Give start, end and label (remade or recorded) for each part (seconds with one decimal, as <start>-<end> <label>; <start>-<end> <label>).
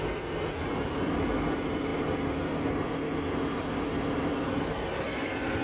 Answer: 0.0-5.6 recorded